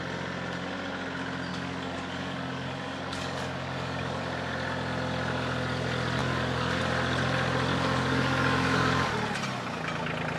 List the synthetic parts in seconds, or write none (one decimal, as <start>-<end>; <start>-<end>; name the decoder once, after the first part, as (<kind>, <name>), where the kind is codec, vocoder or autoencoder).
1.5-4.2 (codec, DAC); 6.2-6.8; 7.7-9.1